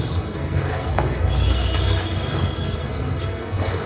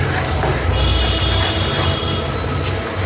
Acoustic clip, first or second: second